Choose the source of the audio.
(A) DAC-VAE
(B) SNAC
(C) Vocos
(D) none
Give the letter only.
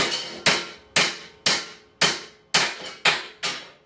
D